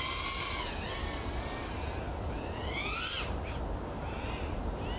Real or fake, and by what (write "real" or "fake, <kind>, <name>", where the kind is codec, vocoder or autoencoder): real